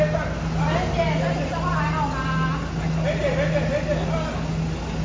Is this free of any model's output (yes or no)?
yes